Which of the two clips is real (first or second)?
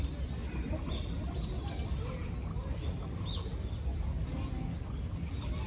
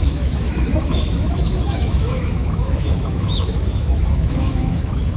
first